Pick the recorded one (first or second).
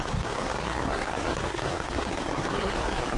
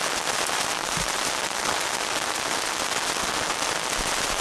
second